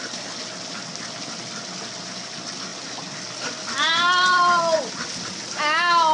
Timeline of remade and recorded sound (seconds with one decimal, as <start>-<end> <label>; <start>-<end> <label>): 0.0-6.1 recorded